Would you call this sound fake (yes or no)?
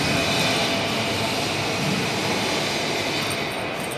no